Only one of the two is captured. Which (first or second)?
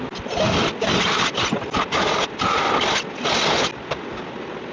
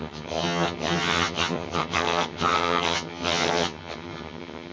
first